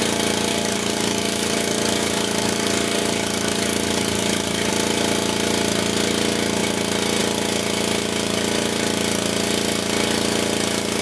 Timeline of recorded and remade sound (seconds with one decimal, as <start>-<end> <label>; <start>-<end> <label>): 0.0-0.5 recorded; 0.5-4.7 remade; 4.7-11.0 recorded